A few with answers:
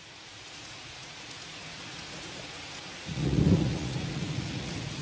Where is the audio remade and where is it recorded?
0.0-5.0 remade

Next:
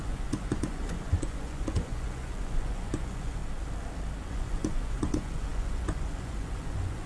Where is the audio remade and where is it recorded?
0.0-3.4 remade; 3.4-4.3 recorded; 4.3-7.1 remade

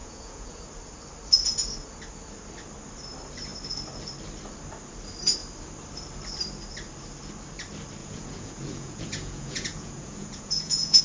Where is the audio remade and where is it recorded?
0.0-0.6 remade; 0.6-8.0 recorded; 8.0-11.0 remade

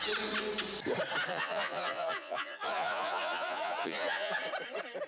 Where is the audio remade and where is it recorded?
0.0-1.3 recorded; 1.3-4.4 remade; 4.4-5.1 recorded

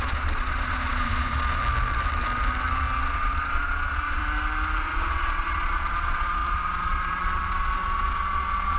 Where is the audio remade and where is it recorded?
0.0-1.6 remade; 1.6-3.0 recorded; 3.0-4.2 remade; 4.2-4.8 recorded; 4.8-8.8 remade

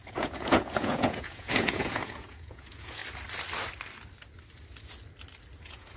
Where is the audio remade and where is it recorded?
0.0-3.0 remade; 3.0-5.6 recorded; 5.6-6.0 remade